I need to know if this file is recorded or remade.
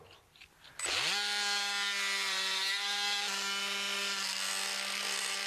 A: recorded